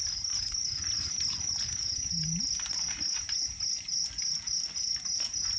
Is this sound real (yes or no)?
yes